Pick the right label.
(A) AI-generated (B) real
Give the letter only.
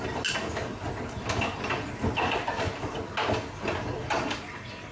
B